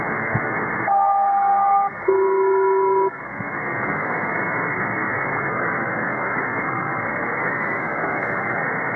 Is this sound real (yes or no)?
no